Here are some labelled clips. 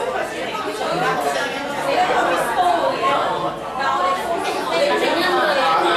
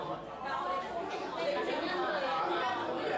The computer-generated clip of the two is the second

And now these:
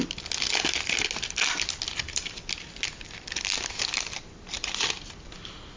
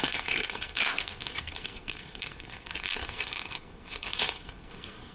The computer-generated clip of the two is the second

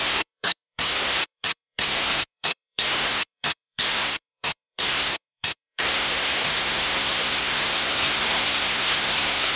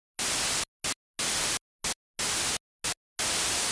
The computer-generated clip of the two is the first